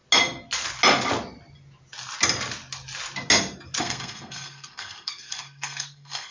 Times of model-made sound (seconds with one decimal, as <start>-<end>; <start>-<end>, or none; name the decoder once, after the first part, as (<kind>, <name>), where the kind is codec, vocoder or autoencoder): 3.8-6.3 (codec, SNAC)